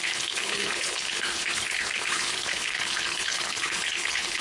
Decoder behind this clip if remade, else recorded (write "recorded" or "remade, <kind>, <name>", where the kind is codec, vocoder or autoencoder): remade, codec, HILCodec